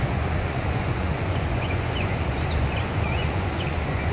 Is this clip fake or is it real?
fake